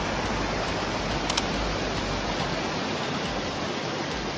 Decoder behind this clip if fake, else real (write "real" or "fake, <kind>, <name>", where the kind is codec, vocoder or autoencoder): real